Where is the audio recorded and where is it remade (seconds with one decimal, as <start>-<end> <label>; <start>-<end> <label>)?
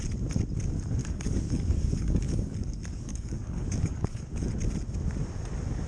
0.0-1.0 recorded; 1.0-4.5 remade; 4.5-5.9 recorded